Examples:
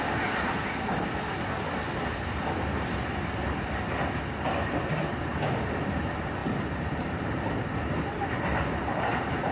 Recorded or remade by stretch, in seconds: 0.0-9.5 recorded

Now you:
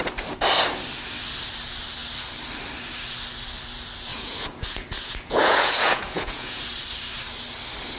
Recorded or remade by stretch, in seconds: 0.0-4.1 recorded; 4.1-6.6 remade; 6.6-8.0 recorded

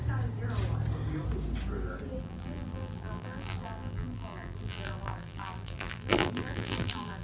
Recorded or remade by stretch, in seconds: 0.0-2.2 recorded; 2.2-7.2 remade

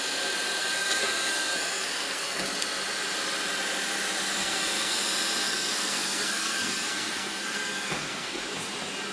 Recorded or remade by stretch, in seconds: 0.0-0.6 recorded; 0.6-2.4 remade; 2.4-4.4 recorded; 4.4-5.0 remade; 5.0-5.5 recorded; 5.5-8.4 remade; 8.4-9.1 recorded

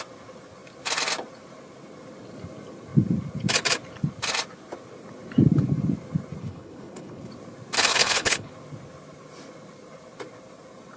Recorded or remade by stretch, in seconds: 0.0-6.4 recorded; 6.4-7.3 remade; 7.3-7.9 recorded; 7.9-8.5 remade; 8.5-11.0 recorded

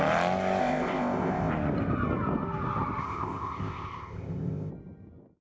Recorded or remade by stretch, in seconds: 0.0-0.6 recorded; 0.6-1.5 remade; 1.5-3.0 recorded; 3.0-4.7 remade; 4.7-5.4 recorded

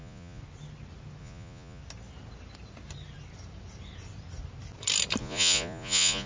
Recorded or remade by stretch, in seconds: 0.0-0.4 remade; 0.4-1.2 recorded; 1.2-1.8 remade; 1.8-5.2 recorded; 5.2-6.3 remade